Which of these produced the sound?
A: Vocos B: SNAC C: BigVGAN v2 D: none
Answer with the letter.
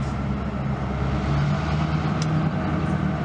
D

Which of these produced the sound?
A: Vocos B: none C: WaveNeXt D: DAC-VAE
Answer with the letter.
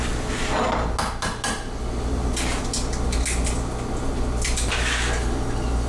B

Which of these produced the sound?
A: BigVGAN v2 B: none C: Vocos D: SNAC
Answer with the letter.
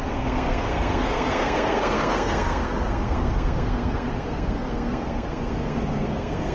D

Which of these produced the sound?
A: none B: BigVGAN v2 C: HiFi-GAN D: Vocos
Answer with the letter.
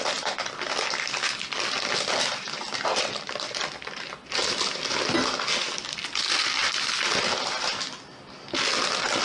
A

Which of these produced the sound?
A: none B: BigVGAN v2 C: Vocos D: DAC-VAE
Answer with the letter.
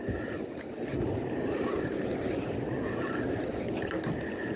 B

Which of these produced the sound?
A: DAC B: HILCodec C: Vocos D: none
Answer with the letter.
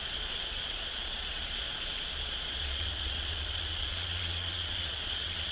C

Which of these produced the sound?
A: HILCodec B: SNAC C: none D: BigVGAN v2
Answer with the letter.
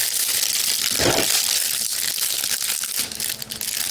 C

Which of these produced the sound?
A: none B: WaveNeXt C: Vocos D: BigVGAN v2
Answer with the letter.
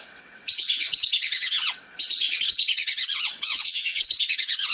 B